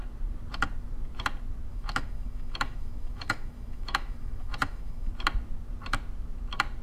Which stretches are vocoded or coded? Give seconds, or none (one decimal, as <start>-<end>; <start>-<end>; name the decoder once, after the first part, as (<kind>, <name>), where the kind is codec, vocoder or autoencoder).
1.7-5.1 (autoencoder, DAC-VAE)